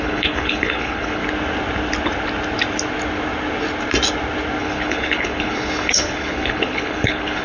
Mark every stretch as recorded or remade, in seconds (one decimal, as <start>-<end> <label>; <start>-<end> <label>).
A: 0.0-1.2 remade; 1.2-4.6 recorded; 4.6-7.4 remade